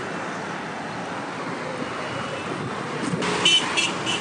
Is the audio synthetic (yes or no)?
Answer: no